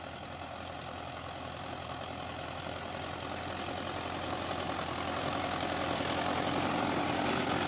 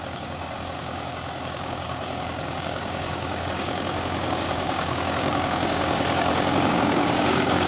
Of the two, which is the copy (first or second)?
second